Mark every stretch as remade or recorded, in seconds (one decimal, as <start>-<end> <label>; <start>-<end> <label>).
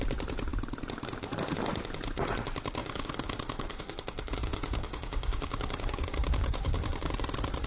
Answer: 0.0-2.8 recorded; 2.8-7.1 remade; 7.1-7.7 recorded